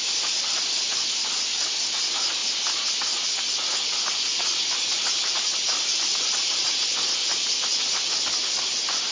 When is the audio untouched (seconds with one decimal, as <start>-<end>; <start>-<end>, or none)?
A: 0.0-9.1

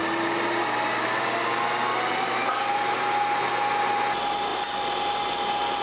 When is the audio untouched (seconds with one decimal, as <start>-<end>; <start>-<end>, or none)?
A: 3.5-4.5